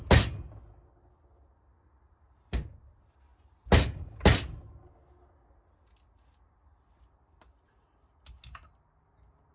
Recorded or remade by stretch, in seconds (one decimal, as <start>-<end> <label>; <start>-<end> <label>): 0.0-9.5 recorded